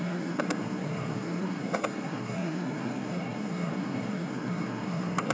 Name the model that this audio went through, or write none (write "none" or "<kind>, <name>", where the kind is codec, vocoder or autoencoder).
codec, SNAC